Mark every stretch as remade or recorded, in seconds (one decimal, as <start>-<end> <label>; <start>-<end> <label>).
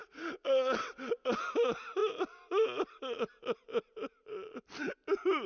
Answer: 0.0-1.3 remade; 1.3-5.5 recorded